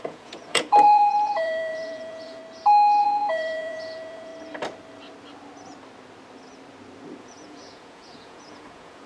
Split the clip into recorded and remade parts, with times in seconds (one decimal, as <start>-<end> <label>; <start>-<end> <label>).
0.0-2.4 remade; 2.4-3.0 recorded; 3.0-4.3 remade; 4.3-7.2 recorded; 7.2-9.1 remade